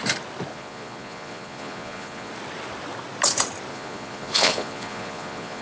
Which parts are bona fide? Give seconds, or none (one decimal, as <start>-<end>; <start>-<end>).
0.0-0.5; 2.3-3.7

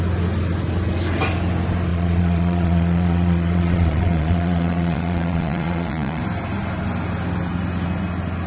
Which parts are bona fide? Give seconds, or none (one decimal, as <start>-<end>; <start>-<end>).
0.0-1.9; 6.2-8.5